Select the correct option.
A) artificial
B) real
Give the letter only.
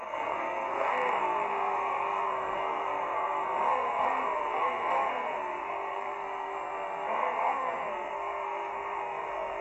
A